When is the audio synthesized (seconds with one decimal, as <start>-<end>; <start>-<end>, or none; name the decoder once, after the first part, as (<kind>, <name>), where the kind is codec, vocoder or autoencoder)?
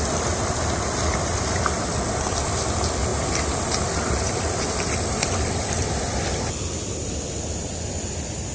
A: 5.2-6.1 (vocoder, BigVGAN v2)